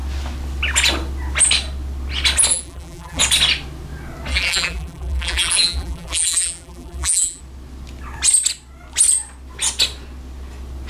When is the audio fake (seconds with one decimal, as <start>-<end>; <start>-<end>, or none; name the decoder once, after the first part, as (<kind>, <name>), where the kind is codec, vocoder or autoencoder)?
2.5-3.2 (vocoder, BigVGAN v2); 4.3-7.4